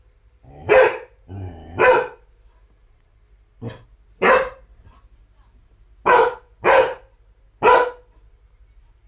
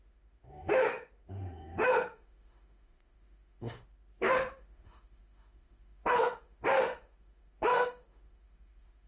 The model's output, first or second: second